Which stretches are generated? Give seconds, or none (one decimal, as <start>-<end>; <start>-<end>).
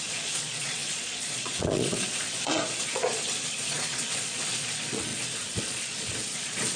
0.0-6.8